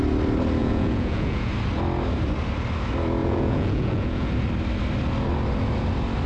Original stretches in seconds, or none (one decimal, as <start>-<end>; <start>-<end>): 0.0-0.6; 1.5-3.2; 4.3-6.3